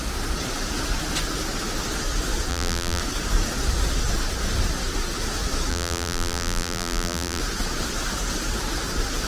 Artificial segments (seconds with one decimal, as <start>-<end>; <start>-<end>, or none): 2.5-3.0; 5.7-7.4